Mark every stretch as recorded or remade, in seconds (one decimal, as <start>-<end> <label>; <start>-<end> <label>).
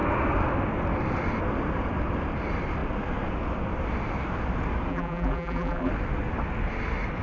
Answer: 0.0-4.9 recorded; 4.9-5.9 remade; 5.9-7.2 recorded